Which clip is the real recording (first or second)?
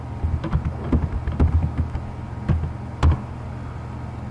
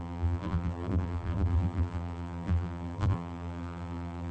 first